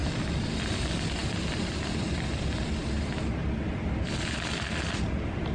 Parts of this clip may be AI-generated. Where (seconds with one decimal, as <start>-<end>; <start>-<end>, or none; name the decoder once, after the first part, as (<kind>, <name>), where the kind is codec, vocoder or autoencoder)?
none